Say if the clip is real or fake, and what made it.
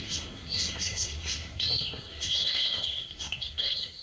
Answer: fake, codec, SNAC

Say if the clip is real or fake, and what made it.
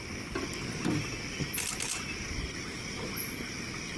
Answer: real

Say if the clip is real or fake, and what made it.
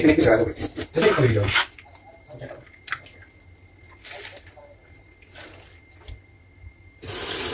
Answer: real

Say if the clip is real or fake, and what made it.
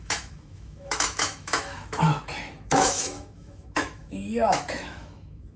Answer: fake, autoencoder, DAC-VAE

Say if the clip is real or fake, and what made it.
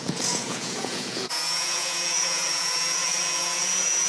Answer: fake, vocoder, Vocos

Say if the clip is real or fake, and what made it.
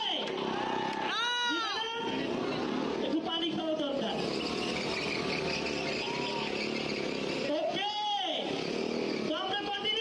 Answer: real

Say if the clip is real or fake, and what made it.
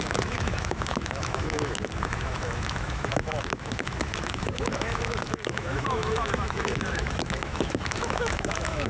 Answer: fake, autoencoder, DAC-VAE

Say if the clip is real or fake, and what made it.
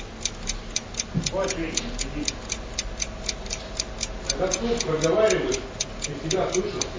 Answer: real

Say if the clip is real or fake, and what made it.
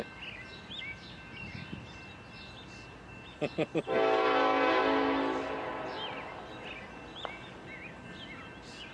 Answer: real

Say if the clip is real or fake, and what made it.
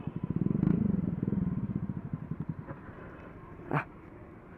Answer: fake, vocoder, BigVGAN v2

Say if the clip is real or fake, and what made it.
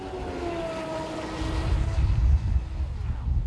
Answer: real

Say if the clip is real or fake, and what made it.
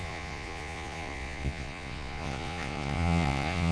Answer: fake, vocoder, Vocos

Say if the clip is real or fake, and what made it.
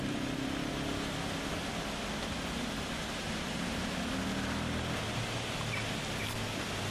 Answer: real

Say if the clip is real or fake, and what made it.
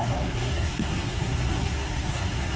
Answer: fake, codec, SNAC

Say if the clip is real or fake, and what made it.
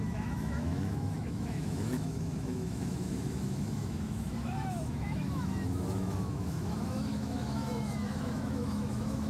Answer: fake, autoencoder, DAC-VAE